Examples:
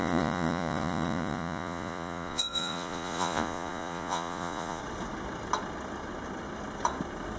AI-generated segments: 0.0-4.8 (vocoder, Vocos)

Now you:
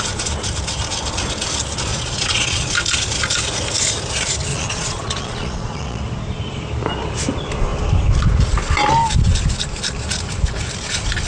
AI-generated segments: 1.9-2.7 (vocoder, Vocos); 4.5-6.0